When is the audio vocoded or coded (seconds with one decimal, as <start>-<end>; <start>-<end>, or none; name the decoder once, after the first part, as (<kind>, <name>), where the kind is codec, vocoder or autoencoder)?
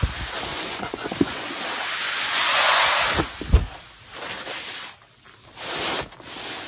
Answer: 0.5-1.6 (vocoder, Vocos); 2.0-2.8